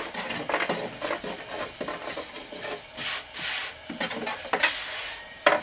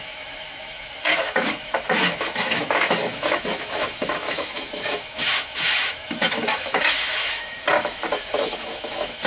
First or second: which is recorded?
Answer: first